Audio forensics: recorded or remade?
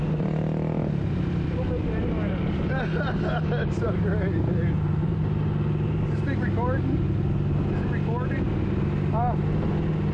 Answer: recorded